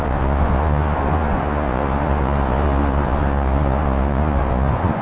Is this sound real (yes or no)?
no